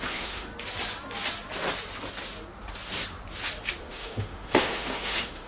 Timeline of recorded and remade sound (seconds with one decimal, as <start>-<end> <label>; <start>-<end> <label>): 0.0-0.5 remade; 0.5-3.8 recorded; 3.8-5.5 remade